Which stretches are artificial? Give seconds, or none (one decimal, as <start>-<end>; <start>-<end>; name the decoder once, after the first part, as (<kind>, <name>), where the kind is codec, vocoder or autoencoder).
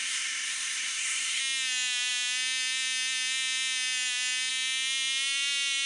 0.0-1.4 (codec, SNAC)